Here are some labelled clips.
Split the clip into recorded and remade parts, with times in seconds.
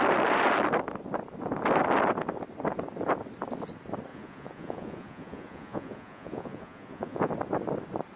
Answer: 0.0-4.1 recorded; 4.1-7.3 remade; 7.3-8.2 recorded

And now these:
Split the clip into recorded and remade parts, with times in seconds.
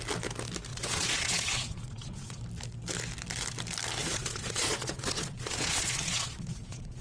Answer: 0.0-0.7 recorded; 0.7-2.4 remade; 2.4-4.0 recorded; 4.0-7.0 remade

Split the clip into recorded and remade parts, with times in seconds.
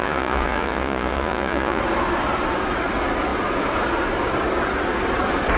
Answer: 0.0-1.8 remade; 1.8-5.6 recorded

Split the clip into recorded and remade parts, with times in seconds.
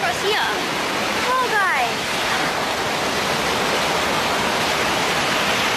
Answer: 0.0-5.8 recorded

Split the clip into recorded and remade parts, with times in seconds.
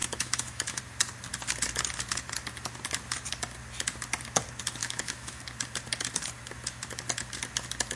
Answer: 0.0-0.8 remade; 0.8-4.8 recorded; 4.8-5.4 remade; 5.4-8.0 recorded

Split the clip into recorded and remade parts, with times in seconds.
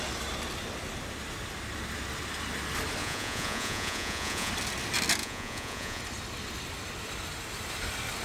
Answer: 0.0-3.0 recorded; 3.0-4.5 remade; 4.5-5.2 recorded; 5.2-6.0 remade; 6.0-8.2 recorded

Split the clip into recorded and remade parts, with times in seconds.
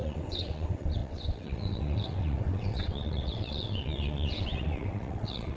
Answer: 0.0-5.6 remade